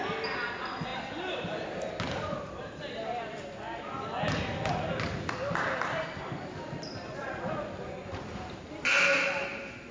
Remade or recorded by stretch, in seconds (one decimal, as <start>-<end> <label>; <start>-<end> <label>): 0.0-9.9 recorded